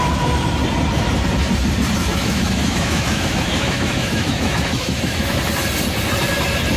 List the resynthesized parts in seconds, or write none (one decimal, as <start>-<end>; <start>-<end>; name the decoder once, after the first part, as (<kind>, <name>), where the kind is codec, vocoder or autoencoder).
2.0-5.4 (autoencoder, DAC-VAE)